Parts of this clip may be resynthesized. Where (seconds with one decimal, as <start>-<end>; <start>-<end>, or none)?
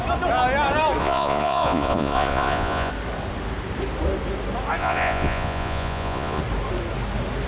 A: 1.0-2.9; 4.8-6.4